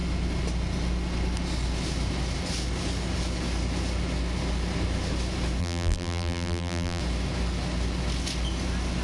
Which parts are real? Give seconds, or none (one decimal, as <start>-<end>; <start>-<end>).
0.0-5.6; 7.0-9.0